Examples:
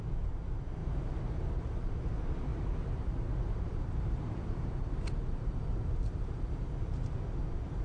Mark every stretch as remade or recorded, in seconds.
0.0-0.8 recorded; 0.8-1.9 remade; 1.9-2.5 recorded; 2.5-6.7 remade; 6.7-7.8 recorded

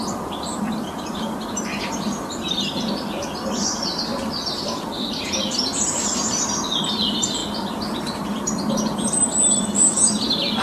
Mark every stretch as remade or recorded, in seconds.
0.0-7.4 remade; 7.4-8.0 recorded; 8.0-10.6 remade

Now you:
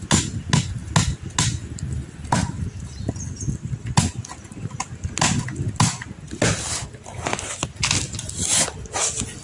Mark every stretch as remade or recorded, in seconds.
0.0-9.4 recorded

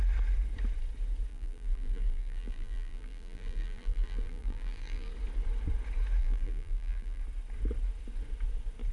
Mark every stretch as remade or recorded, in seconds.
0.0-1.3 recorded; 1.3-5.1 remade; 5.1-6.2 recorded; 6.2-7.2 remade; 7.2-8.9 recorded

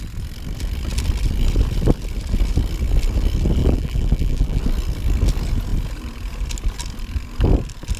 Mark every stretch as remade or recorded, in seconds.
0.0-3.6 recorded; 3.6-4.6 remade; 4.6-8.0 recorded

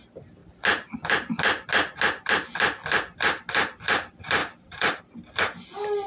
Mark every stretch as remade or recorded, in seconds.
0.0-4.4 recorded; 4.4-5.0 remade; 5.0-6.1 recorded